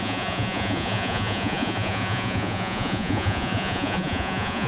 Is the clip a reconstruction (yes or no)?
yes